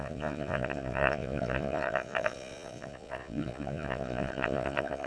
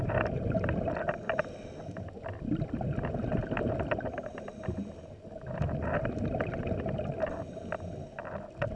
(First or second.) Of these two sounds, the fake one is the first